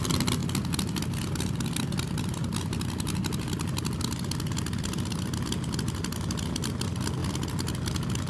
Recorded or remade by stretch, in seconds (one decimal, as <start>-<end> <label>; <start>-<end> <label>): 0.0-8.3 recorded